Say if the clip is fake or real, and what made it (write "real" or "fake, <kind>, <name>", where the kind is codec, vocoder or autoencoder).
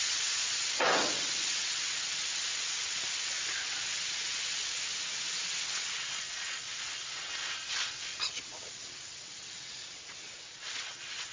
fake, vocoder, WaveNeXt